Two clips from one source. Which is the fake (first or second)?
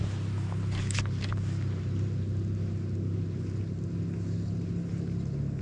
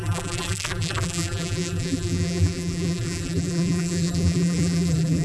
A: second